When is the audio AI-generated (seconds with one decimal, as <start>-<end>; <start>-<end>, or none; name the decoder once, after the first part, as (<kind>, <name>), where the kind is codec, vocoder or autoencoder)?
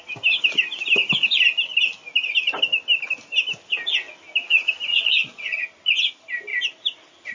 4.9-5.6 (vocoder, Vocos)